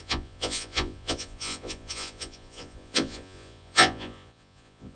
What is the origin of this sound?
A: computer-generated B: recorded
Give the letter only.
A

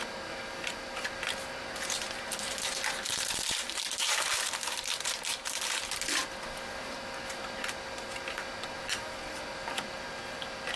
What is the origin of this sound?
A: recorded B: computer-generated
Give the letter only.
A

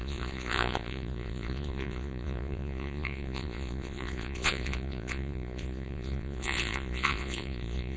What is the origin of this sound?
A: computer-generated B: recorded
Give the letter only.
A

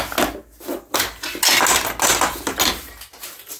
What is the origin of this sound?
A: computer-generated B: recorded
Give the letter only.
B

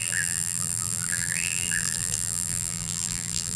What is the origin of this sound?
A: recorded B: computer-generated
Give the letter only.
B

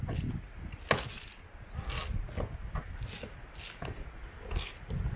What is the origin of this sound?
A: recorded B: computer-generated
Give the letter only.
A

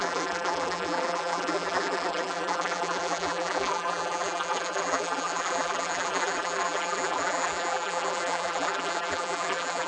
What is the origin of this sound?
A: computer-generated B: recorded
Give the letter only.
A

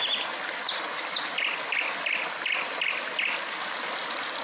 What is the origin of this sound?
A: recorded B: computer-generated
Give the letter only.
A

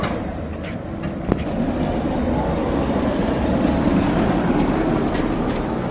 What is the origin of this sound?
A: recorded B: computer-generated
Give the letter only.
A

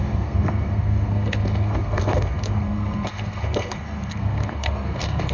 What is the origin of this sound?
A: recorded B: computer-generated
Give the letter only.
B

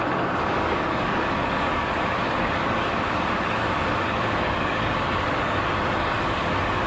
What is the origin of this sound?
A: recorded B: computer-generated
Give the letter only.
B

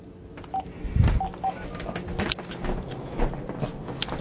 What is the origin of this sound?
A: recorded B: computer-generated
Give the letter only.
A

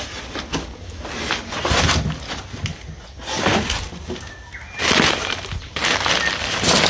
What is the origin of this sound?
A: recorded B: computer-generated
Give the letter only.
A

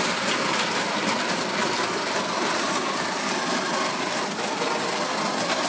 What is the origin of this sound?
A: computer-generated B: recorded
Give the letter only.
A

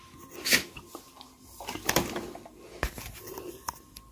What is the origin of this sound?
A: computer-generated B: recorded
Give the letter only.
B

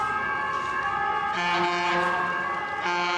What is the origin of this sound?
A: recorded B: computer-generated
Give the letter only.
A